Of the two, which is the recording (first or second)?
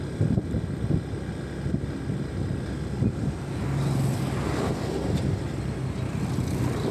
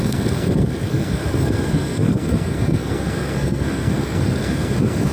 first